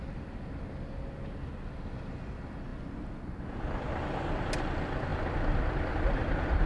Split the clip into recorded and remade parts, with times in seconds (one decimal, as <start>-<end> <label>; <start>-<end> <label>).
0.0-6.7 recorded